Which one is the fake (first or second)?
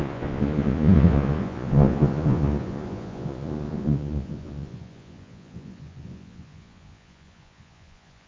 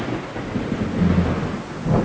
first